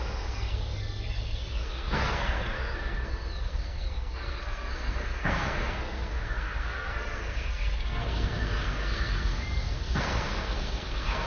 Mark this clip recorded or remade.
remade